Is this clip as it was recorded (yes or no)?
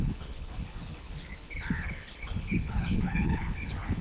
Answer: no